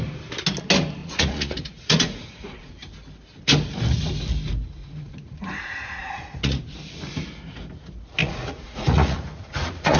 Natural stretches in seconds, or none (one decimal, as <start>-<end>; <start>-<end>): 0.0-1.0; 2.7-4.8; 6.6-8.2